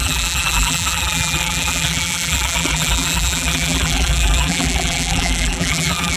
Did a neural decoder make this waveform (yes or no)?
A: yes